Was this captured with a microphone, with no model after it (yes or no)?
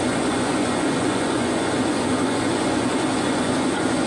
no